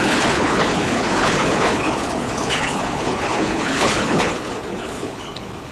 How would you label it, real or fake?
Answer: fake